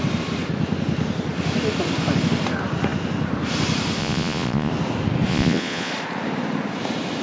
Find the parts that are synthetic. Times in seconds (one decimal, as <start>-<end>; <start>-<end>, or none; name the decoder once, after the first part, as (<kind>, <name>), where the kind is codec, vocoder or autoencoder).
4.0-4.7 (vocoder, Vocos); 5.3-5.9